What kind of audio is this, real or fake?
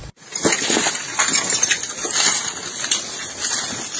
real